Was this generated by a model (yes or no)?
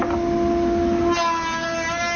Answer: no